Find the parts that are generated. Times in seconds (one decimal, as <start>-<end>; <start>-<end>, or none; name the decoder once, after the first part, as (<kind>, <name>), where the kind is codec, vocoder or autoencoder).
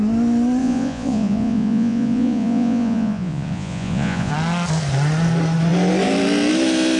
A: 0.6-4.3 (vocoder, Vocos)